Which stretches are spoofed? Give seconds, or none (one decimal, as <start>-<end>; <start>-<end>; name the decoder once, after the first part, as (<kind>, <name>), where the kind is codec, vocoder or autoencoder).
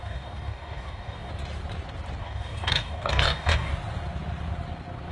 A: 0.0-1.3 (codec, DAC); 2.2-3.7